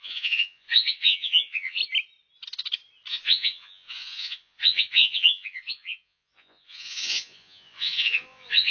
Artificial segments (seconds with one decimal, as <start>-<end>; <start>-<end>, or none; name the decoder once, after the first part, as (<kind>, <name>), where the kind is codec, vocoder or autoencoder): 0.0-1.8 (vocoder, Vocos); 3.1-8.7